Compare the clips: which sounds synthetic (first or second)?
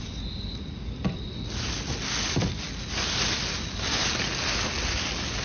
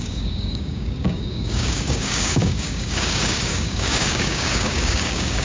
second